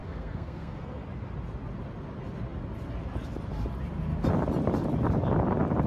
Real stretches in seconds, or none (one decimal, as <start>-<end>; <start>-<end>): 0.8-5.9